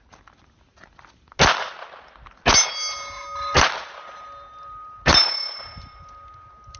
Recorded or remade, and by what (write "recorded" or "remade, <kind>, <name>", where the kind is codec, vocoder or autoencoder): recorded